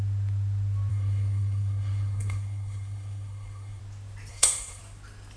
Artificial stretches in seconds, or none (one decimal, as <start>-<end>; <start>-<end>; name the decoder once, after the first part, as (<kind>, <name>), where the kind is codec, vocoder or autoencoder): 0.9-3.8 (codec, SNAC); 4.3-4.8